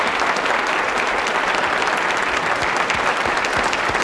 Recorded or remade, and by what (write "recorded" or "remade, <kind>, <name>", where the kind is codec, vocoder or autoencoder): recorded